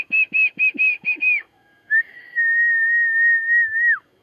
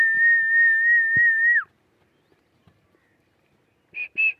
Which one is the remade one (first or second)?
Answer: first